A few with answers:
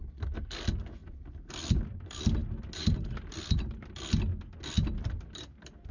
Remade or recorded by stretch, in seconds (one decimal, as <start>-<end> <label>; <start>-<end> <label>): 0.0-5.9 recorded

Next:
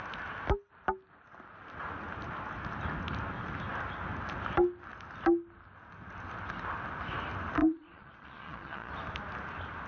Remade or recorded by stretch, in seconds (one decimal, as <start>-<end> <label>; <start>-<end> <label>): 0.0-7.6 recorded; 7.6-8.9 remade; 8.9-9.9 recorded

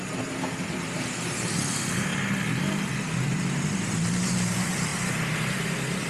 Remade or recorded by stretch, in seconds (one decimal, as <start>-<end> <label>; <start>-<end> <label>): 0.0-2.1 remade; 2.1-2.6 recorded; 2.6-6.1 remade

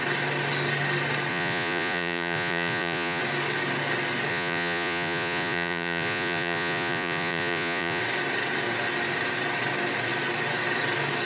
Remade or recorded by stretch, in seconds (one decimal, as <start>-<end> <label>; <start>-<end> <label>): 0.0-1.3 recorded; 1.3-3.2 remade; 3.2-4.3 recorded; 4.3-8.0 remade; 8.0-11.3 recorded

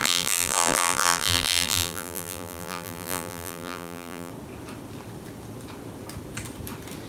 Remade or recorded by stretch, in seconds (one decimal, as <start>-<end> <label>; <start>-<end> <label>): 0.0-4.3 remade; 4.3-7.1 recorded